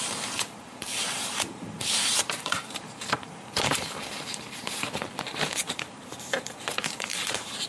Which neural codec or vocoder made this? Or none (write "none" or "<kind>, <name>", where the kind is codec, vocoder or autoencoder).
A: vocoder, BigVGAN v2